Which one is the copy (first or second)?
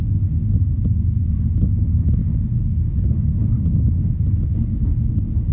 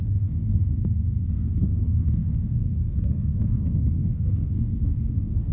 second